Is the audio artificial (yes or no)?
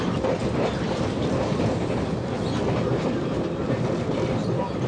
yes